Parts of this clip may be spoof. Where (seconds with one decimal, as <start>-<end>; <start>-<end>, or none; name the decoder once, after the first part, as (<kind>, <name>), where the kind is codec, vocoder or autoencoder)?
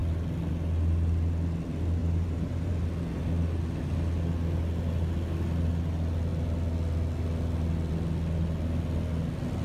2.0-2.7 (vocoder, BigVGAN v2)